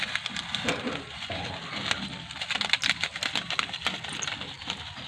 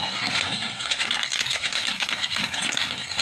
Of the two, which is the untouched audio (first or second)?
first